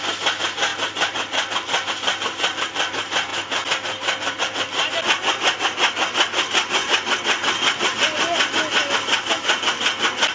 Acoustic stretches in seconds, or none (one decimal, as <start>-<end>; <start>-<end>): 0.0-10.3